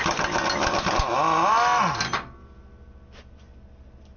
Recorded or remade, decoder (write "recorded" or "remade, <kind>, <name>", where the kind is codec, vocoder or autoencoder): recorded